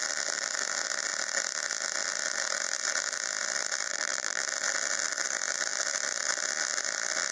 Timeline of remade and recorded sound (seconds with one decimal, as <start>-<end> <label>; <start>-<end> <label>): 0.0-3.9 recorded; 3.9-4.4 remade; 4.4-7.3 recorded